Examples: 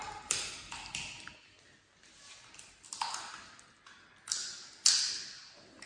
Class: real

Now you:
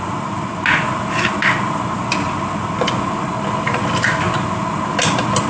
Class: real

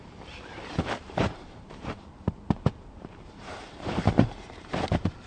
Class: fake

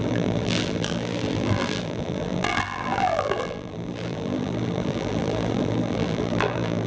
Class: fake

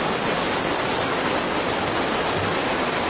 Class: fake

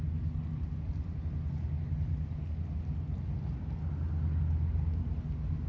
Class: real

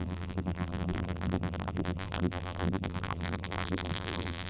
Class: fake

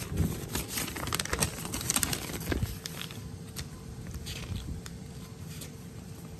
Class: fake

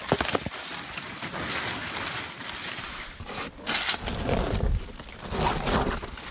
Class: real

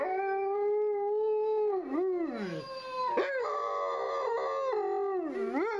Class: real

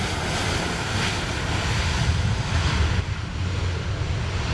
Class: real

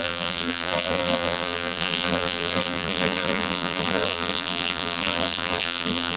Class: fake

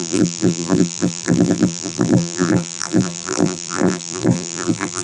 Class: fake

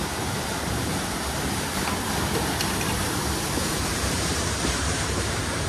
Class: fake